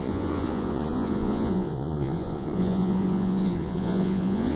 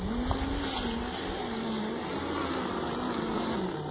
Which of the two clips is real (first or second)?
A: second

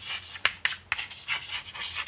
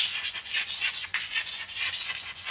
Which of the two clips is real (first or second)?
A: first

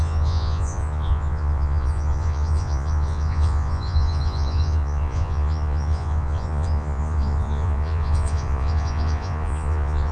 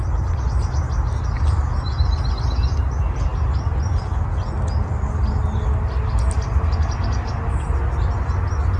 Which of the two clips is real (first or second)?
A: second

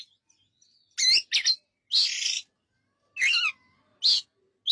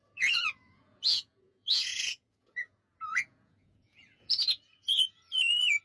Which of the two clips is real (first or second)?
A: first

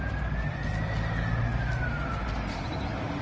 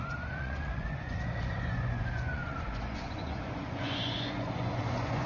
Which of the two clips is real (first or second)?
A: first